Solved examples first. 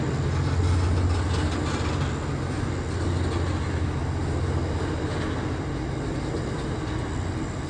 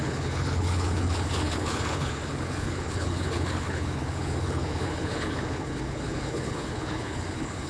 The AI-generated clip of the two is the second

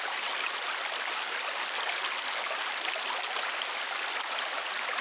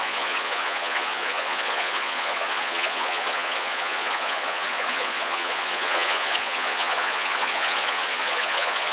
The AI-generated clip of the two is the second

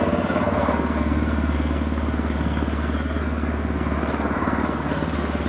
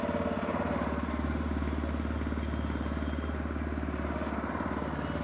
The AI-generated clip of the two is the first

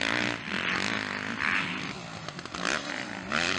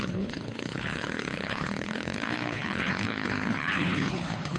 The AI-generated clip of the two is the second